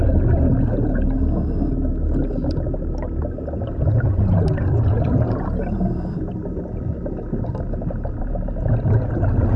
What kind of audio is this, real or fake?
real